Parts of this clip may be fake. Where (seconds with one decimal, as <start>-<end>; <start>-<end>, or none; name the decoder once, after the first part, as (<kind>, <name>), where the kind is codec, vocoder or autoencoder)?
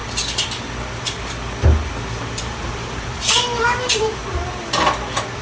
2.2-4.2 (vocoder, BigVGAN v2)